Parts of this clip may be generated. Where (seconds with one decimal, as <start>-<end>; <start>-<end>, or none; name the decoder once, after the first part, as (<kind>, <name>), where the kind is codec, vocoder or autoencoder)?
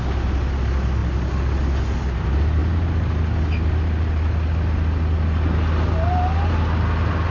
none